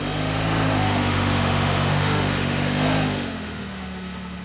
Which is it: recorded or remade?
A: remade